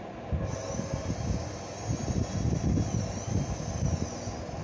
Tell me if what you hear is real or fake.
real